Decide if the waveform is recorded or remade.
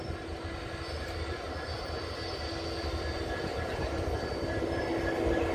recorded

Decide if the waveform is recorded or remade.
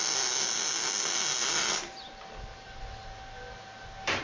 recorded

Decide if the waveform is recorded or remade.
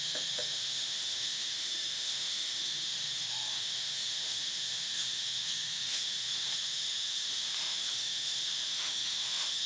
remade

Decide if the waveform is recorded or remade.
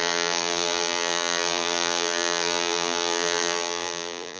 remade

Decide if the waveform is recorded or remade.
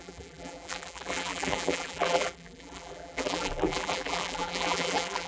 remade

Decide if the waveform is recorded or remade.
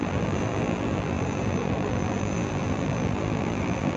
remade